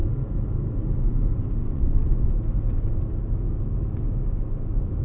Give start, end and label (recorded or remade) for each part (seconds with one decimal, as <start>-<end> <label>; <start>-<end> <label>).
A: 0.0-1.6 recorded; 1.6-2.3 remade; 2.3-5.0 recorded